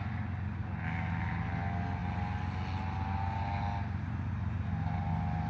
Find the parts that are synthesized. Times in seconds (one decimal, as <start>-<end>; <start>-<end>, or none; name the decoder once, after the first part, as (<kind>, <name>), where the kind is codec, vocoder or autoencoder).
none